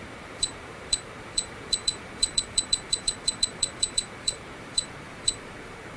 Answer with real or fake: fake